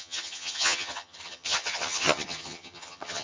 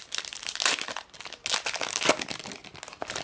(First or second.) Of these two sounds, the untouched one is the second